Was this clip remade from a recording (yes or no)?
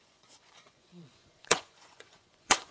yes